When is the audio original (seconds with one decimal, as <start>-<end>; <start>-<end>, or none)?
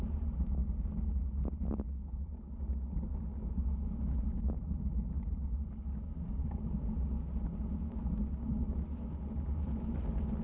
0.0-10.4